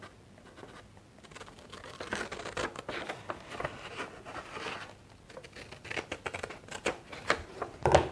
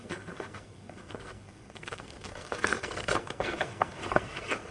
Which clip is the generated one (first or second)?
second